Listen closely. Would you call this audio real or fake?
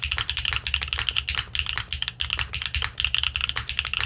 real